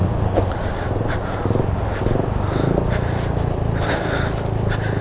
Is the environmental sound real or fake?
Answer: real